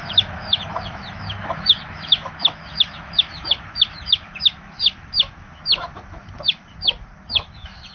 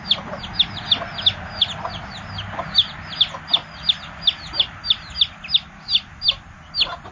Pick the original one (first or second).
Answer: second